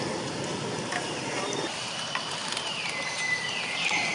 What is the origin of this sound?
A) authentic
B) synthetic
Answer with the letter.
A